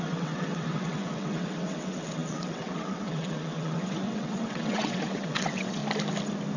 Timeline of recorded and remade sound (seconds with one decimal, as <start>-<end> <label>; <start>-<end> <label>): 0.0-5.8 remade; 5.8-6.6 recorded